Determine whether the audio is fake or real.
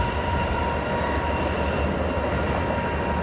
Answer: real